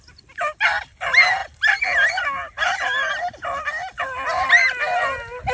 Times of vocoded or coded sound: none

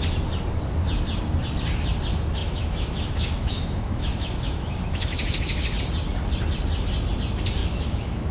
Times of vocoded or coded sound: 2.4-5.7; 7.6-8.3

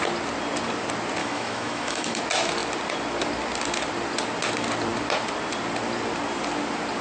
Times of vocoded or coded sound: 1.2-2.2

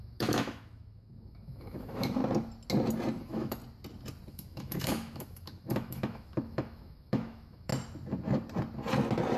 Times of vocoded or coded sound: 0.0-2.2; 3.2-3.6; 4.3-7.7